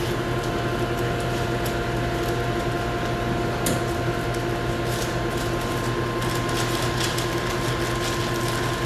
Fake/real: real